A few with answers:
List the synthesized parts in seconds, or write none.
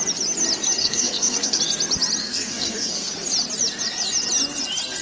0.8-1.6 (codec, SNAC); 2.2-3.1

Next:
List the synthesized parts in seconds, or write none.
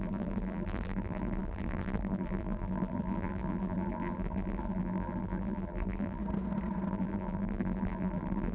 0.0-6.2 (vocoder, BigVGAN v2); 6.9-8.5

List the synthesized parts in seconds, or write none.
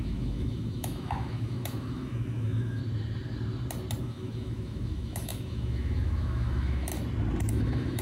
0.0-2.8 (autoencoder, DAC-VAE); 4.0-6.9; 7.5-8.0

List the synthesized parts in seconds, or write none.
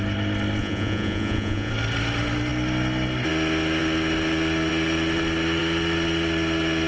0.6-1.7 (vocoder, Vocos)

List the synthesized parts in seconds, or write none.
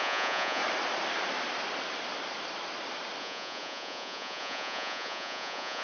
0.0-0.6 (vocoder, Vocos); 3.2-5.8